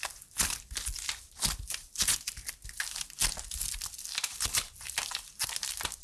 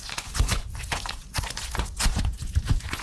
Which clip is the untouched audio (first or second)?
first